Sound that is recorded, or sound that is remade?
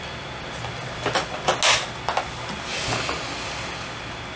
recorded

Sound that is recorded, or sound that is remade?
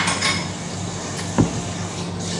recorded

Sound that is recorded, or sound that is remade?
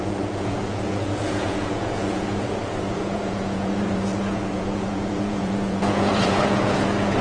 remade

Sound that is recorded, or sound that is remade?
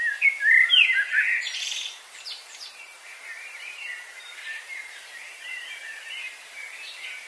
remade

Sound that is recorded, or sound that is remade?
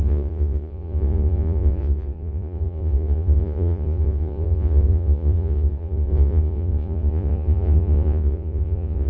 remade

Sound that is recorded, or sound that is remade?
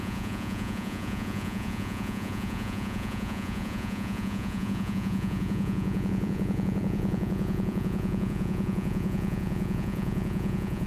remade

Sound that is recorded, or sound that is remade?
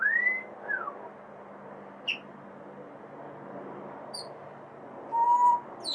recorded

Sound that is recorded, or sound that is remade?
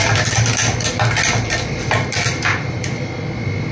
recorded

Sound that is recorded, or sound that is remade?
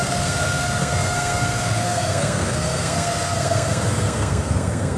remade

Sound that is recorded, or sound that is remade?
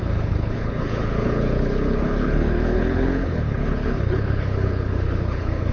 remade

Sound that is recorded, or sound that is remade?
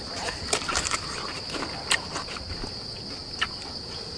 recorded